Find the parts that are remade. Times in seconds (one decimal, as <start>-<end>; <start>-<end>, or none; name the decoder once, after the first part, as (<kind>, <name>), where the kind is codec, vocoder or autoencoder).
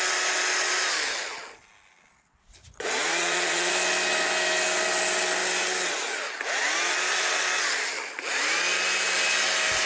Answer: 2.6-3.7 (vocoder, Vocos)